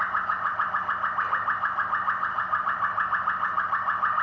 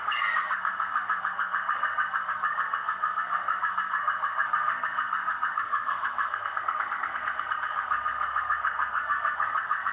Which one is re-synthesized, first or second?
second